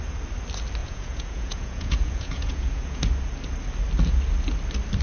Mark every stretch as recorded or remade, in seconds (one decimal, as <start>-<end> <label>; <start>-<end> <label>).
0.0-0.8 recorded; 0.8-3.0 remade; 3.0-5.0 recorded